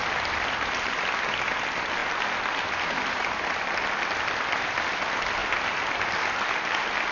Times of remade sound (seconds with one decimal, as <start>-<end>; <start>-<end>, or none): 2.0-3.0; 5.4-6.5